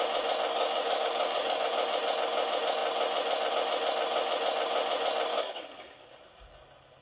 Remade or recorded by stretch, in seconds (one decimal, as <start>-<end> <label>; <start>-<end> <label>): 0.0-0.5 recorded; 0.5-1.7 remade; 1.7-5.3 recorded; 5.3-6.2 remade; 6.2-7.0 recorded